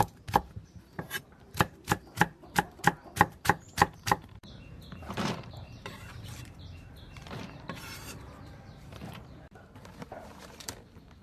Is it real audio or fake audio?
fake